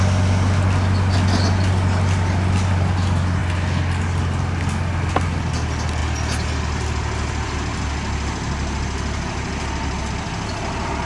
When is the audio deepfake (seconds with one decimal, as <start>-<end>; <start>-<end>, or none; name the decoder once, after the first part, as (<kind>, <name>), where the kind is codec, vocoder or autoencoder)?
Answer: none